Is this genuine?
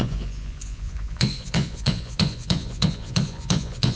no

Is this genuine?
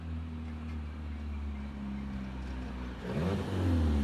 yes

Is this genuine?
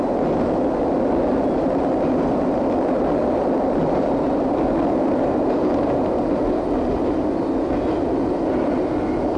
yes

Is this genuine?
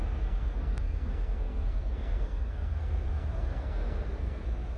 no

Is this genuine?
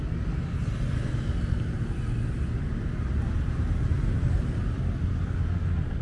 yes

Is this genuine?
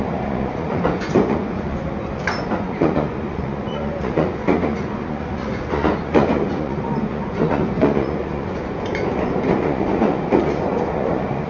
no